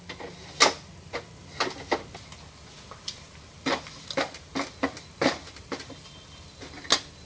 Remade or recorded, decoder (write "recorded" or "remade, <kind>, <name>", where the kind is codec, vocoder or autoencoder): recorded